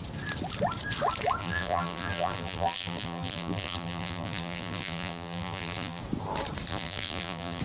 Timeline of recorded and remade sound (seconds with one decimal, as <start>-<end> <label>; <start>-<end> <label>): 0.0-1.4 recorded; 1.4-6.0 remade; 6.0-6.7 recorded; 6.7-7.6 remade